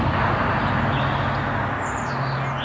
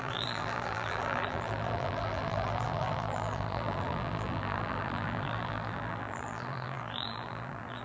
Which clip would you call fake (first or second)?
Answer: second